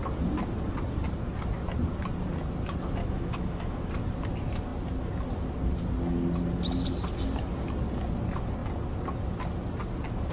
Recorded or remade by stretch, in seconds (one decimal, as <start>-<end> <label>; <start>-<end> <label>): 0.0-3.0 recorded; 3.0-3.9 remade; 3.9-10.3 recorded